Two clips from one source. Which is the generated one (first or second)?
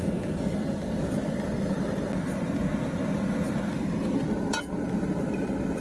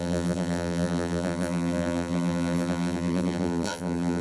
second